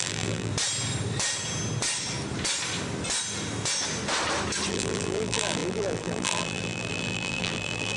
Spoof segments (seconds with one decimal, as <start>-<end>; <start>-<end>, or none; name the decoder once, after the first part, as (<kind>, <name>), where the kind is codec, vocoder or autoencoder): 0.0-0.5 (vocoder, BigVGAN v2); 4.7-8.0